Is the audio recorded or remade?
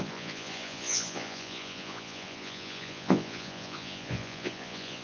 remade